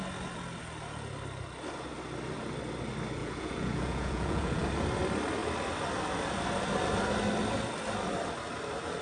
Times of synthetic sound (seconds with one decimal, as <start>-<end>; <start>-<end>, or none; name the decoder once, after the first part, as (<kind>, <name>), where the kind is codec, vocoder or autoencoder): 3.2-4.7 (vocoder, Vocos)